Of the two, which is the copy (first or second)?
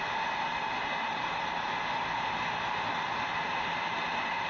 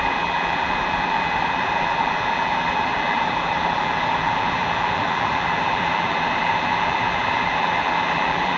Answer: second